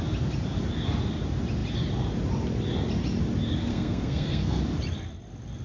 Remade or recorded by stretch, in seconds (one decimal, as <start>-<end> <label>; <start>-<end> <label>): 0.0-3.7 recorded; 3.7-4.6 remade; 4.6-5.6 recorded